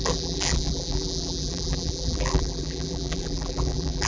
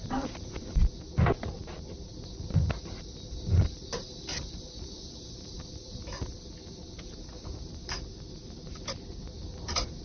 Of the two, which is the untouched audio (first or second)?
second